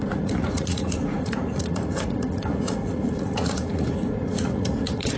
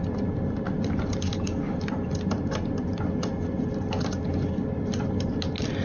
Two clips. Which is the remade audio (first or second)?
first